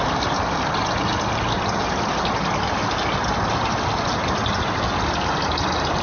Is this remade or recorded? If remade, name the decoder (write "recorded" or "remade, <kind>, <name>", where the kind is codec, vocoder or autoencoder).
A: recorded